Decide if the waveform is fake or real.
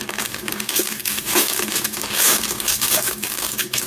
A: fake